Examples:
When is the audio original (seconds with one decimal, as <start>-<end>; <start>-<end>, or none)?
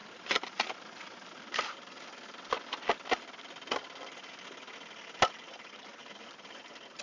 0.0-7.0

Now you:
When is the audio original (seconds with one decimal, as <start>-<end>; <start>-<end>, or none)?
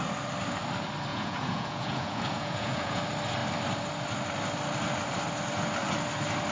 0.0-1.1; 3.0-6.5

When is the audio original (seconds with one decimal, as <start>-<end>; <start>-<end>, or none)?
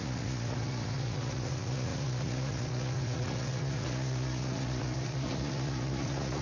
none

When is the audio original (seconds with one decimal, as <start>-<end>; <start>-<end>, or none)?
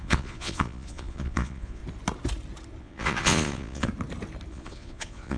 1.8-2.8; 3.9-4.5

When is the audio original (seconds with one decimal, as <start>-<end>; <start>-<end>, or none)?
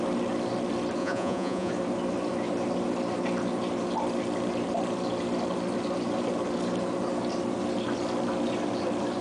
0.0-1.0; 1.7-9.2